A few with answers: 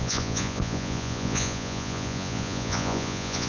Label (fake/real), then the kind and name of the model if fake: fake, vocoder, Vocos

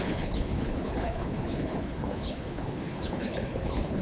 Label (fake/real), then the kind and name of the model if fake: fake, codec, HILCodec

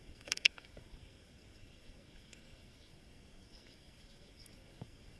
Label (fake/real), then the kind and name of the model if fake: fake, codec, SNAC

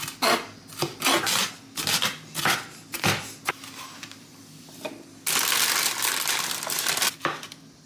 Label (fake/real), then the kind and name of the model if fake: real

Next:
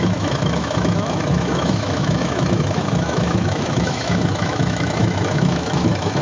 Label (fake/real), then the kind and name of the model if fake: fake, autoencoder, DAC-VAE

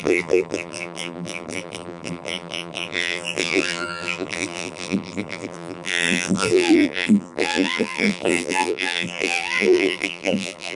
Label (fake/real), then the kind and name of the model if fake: fake, vocoder, BigVGAN v2